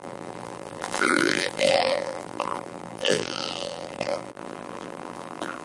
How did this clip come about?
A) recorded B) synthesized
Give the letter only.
B